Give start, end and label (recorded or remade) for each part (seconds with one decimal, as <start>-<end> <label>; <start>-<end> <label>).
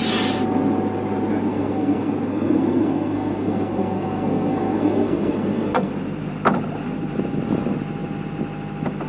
0.0-1.5 recorded; 1.5-5.9 remade; 5.9-9.1 recorded